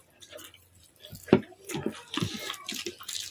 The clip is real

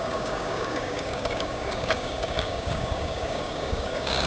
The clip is fake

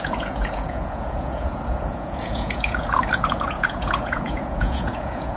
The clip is fake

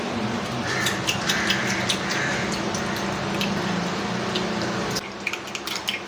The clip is real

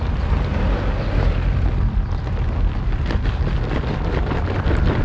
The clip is real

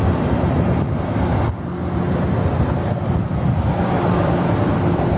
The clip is real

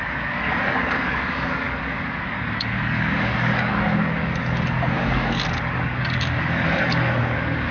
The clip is fake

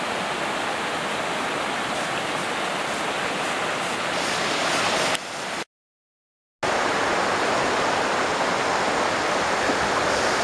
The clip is real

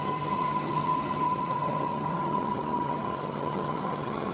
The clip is fake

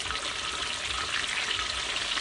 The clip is real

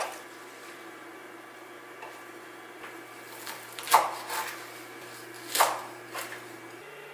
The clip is real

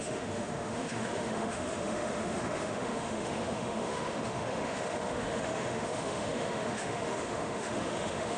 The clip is fake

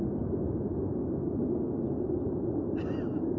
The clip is real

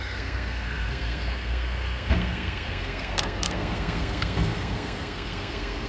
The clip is fake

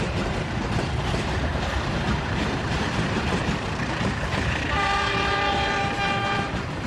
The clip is fake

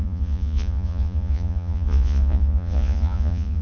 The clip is fake